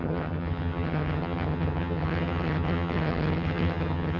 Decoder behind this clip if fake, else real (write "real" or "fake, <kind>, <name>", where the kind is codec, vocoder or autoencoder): fake, vocoder, HiFi-GAN